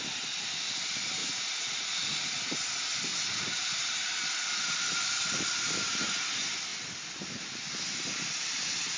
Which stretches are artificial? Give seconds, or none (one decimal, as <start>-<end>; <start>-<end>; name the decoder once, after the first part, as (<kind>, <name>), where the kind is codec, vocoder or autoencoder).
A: 1.2-2.2 (vocoder, Vocos); 3.1-3.7